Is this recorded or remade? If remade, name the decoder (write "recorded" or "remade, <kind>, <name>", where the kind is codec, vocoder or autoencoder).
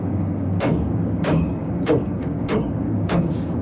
remade, codec, DAC